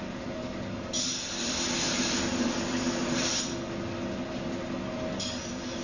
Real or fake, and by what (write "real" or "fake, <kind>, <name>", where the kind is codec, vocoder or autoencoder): real